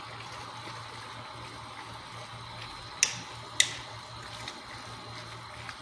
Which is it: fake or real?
real